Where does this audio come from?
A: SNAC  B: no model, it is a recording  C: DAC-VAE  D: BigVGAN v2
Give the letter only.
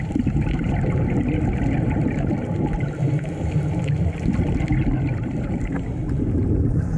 B